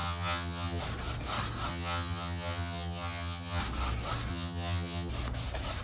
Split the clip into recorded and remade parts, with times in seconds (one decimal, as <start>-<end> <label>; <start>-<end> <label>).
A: 0.0-0.8 remade; 0.8-1.7 recorded; 1.7-3.6 remade; 3.6-4.3 recorded; 4.3-5.1 remade; 5.1-5.8 recorded